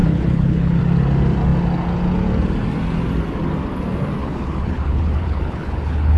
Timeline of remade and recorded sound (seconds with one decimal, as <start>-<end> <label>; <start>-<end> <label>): 0.0-0.8 remade; 0.8-4.2 recorded; 4.2-6.2 remade